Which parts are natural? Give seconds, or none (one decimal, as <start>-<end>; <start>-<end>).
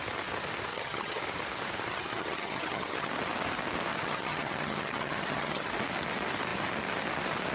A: 0.0-0.7; 1.2-1.9; 3.1-3.9; 5.7-7.5